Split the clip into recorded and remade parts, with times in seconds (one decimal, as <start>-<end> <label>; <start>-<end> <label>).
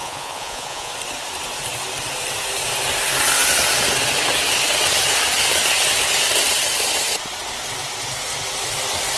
0.0-0.9 remade; 0.9-9.2 recorded